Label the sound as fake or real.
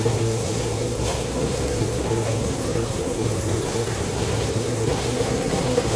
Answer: fake